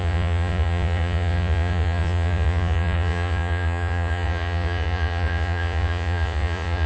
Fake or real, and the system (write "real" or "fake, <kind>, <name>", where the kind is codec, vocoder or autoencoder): fake, vocoder, Vocos